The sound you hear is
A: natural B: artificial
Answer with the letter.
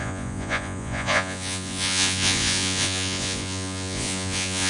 B